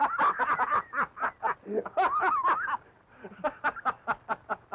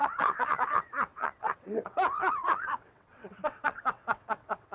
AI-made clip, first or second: second